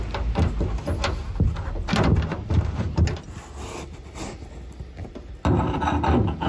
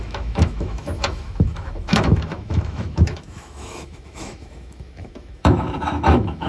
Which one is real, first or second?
first